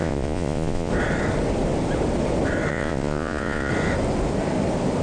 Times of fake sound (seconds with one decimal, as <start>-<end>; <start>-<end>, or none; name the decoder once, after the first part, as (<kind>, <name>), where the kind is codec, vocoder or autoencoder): 0.0-0.9 (vocoder, Vocos); 2.7-3.7